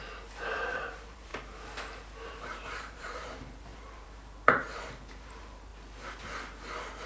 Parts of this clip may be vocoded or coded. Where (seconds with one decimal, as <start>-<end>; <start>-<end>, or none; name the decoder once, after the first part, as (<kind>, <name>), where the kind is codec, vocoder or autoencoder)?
0.0-1.3 (vocoder, BigVGAN v2); 2.3-5.7

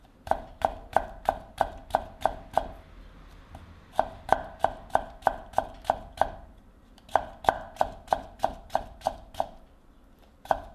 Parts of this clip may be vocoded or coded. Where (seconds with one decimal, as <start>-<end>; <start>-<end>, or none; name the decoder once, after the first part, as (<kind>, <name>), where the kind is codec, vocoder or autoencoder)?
0.0-1.8 (vocoder, BigVGAN v2); 3.4-10.7

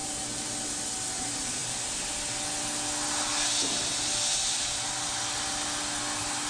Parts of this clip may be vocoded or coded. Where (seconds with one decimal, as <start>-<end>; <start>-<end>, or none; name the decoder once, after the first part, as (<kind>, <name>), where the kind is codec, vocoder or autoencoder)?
none

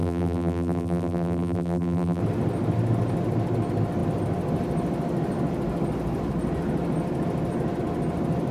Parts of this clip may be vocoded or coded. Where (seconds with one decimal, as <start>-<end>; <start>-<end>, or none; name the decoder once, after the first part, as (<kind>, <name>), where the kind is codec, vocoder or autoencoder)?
0.0-2.2 (vocoder, BigVGAN v2)

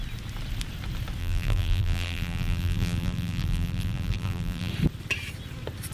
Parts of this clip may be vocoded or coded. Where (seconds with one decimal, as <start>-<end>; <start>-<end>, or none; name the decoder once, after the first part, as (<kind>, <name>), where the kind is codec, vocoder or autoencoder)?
1.2-4.7 (vocoder, BigVGAN v2)

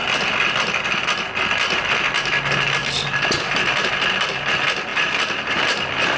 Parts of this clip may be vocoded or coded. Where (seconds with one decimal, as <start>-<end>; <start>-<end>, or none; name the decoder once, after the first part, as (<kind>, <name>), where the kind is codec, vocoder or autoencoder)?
none